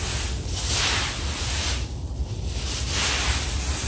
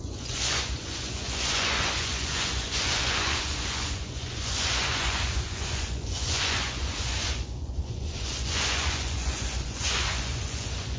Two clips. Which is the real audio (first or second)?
first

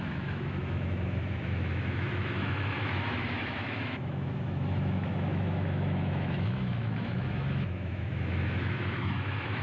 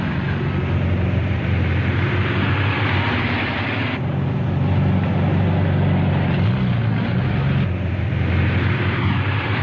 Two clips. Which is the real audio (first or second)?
second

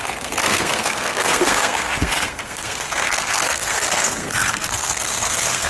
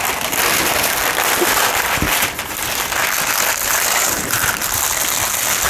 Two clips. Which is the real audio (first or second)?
second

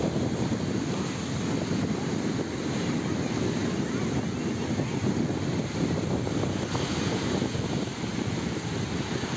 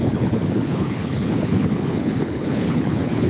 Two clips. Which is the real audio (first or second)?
first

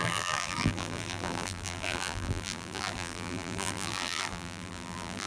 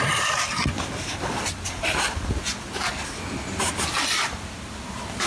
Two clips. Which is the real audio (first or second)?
second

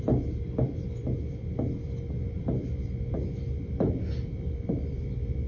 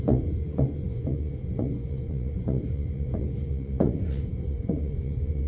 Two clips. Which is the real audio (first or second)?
first